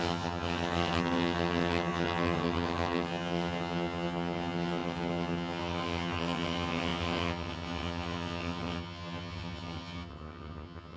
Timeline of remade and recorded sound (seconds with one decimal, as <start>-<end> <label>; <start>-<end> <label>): 0.0-11.0 remade

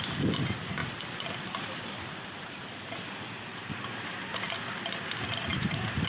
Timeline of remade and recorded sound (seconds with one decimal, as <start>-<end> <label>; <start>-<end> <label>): 0.0-0.8 recorded; 0.8-4.5 remade; 4.5-5.5 recorded; 5.5-6.1 remade

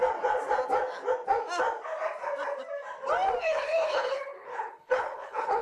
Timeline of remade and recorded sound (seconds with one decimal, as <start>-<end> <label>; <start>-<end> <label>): 0.0-3.4 recorded; 3.4-5.6 remade

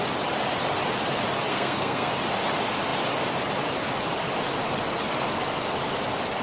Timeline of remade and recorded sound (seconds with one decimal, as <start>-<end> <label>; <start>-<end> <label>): 0.0-1.5 recorded; 1.5-2.1 remade; 2.1-6.4 recorded